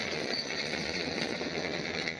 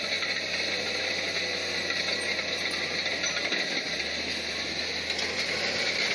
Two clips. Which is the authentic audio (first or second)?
second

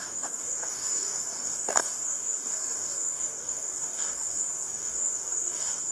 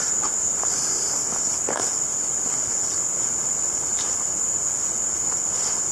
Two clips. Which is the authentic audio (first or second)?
second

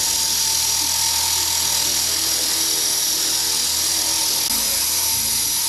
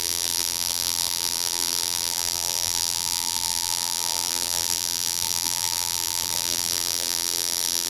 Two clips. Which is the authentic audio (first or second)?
first